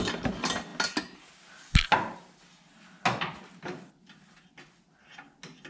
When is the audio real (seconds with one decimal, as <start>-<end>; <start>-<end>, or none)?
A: 0.0-5.7